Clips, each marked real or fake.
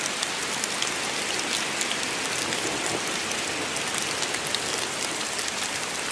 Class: real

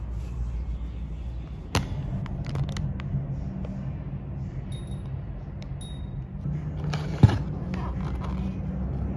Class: real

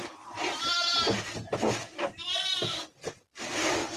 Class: real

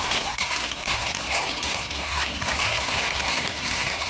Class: fake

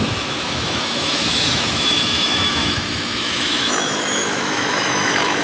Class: fake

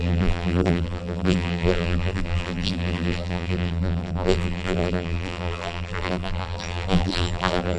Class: fake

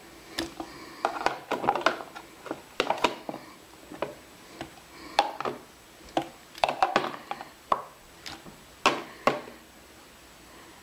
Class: real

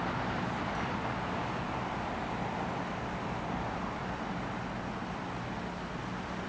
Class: real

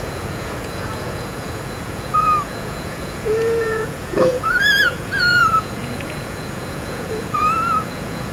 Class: fake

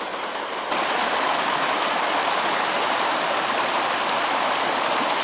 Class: real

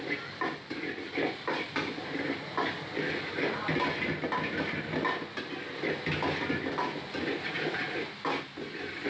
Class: real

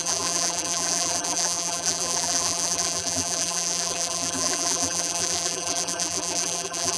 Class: fake